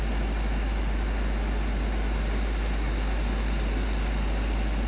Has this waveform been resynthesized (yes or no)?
no